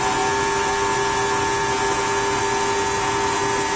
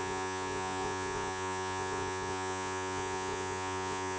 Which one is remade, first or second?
second